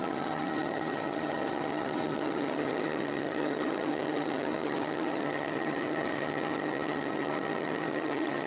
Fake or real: fake